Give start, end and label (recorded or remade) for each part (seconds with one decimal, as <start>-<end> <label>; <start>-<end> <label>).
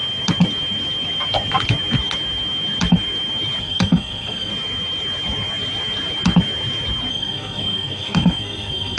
0.0-3.6 recorded; 3.6-4.5 remade; 4.5-7.1 recorded; 7.1-9.0 remade